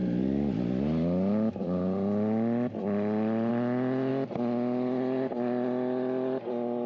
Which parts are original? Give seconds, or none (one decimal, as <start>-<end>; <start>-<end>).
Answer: 0.0-6.9